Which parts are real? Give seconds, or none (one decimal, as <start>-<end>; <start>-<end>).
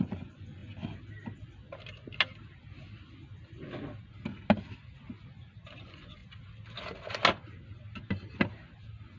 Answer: 0.6-5.8; 6.2-9.2